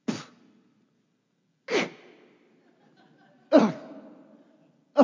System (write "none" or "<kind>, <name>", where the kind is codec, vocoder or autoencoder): none